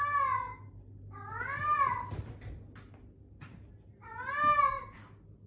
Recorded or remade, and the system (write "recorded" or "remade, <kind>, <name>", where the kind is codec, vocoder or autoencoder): recorded